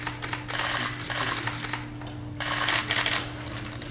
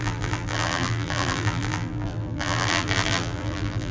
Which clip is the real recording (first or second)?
first